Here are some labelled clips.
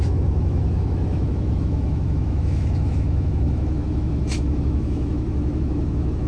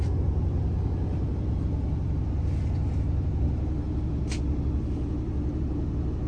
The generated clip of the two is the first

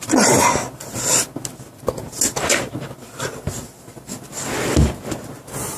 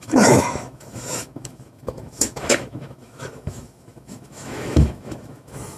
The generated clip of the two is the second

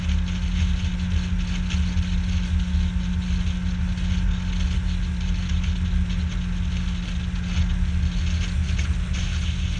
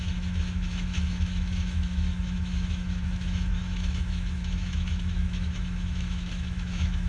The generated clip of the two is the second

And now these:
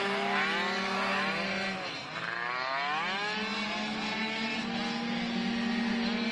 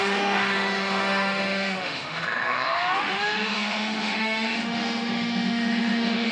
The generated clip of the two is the second